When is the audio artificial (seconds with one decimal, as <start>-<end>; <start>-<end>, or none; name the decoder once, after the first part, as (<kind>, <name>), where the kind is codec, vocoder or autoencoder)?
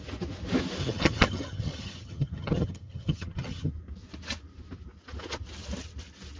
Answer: 0.8-3.7 (vocoder, HiFi-GAN)